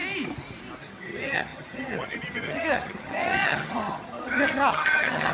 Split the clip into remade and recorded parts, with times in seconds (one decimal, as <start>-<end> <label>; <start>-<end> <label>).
0.0-0.8 recorded; 0.8-5.3 remade